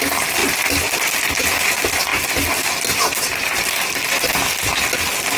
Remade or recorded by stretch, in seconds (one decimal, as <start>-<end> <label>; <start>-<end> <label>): 0.0-5.4 recorded